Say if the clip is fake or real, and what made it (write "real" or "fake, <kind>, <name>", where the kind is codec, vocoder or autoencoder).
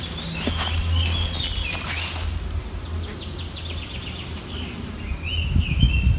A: real